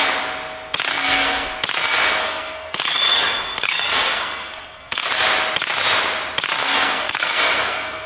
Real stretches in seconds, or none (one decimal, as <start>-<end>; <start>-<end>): 0.0-0.9; 1.5-2.2; 5.1-6.6